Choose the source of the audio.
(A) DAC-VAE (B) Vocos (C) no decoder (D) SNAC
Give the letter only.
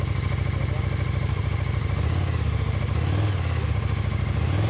C